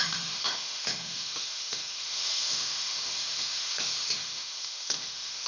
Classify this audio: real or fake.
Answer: fake